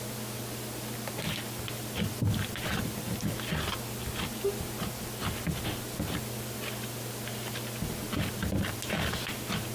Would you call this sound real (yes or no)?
yes